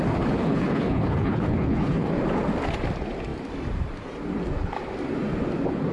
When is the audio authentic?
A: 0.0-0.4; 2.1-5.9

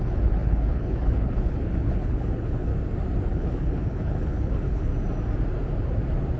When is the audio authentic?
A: 2.7-3.3; 4.9-6.4

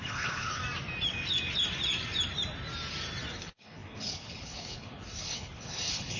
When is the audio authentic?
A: 0.6-3.3

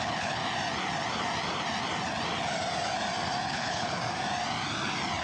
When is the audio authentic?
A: 0.4-3.5; 4.0-5.2

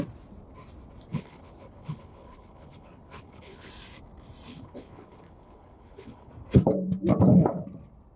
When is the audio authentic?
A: 0.0-1.1; 3.7-4.5; 6.3-8.2

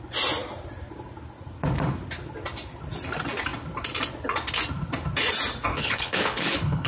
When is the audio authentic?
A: 0.0-5.7

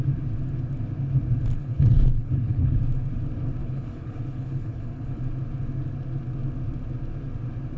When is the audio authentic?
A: 0.0-1.6; 2.8-3.6; 5.2-7.8